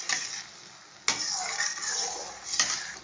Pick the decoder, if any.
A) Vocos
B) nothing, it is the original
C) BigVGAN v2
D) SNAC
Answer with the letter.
B